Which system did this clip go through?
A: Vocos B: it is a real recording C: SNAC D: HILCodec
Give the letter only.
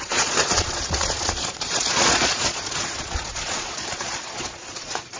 A